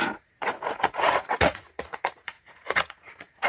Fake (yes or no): yes